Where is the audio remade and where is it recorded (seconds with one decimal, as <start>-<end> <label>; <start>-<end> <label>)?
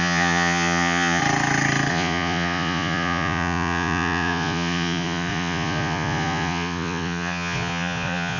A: 0.0-1.2 remade; 1.2-1.9 recorded; 1.9-8.4 remade